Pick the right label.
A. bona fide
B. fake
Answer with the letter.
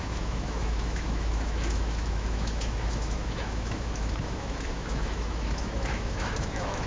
B